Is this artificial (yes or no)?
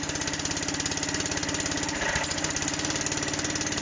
no